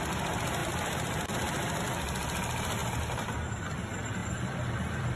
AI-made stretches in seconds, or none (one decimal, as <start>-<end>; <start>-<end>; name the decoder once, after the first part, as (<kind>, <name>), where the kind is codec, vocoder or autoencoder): 0.6-1.8 (vocoder, BigVGAN v2); 4.2-5.2